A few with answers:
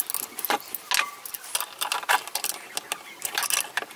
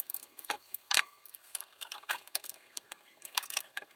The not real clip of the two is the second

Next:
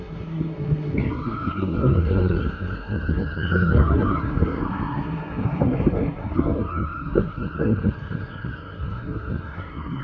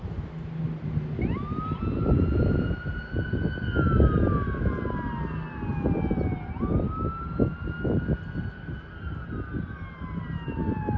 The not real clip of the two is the first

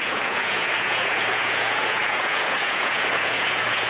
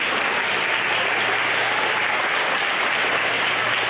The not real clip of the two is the first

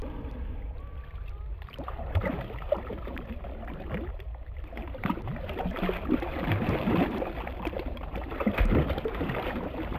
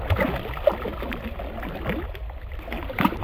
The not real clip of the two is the first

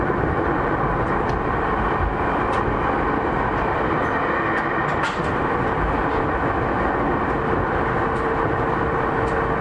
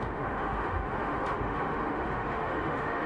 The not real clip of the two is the second